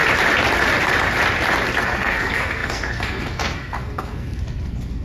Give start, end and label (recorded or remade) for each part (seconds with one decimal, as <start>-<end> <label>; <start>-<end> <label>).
0.0-1.8 recorded; 1.8-5.0 remade